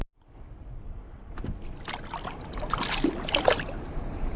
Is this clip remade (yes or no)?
no